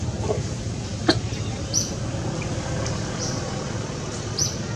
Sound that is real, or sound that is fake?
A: real